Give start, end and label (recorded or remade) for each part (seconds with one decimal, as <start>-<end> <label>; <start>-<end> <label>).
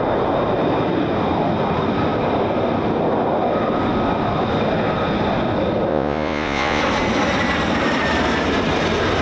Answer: 0.0-5.9 recorded; 5.9-6.8 remade; 6.8-9.2 recorded